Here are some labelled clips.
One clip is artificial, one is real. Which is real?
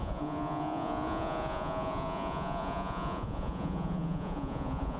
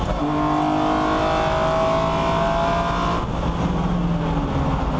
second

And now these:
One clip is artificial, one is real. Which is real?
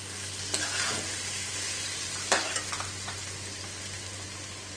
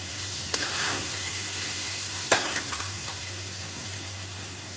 first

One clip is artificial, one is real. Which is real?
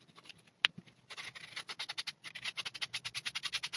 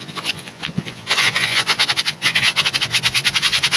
first